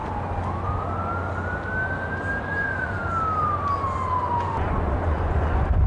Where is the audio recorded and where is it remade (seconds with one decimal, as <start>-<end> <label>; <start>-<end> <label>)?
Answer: 0.0-2.4 recorded; 2.4-3.0 remade; 3.0-4.3 recorded; 4.3-5.9 remade